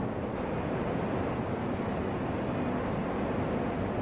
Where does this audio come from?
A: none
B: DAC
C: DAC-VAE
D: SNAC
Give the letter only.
A